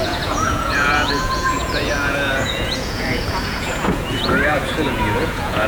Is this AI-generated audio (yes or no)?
yes